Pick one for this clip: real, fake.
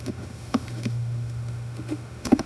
fake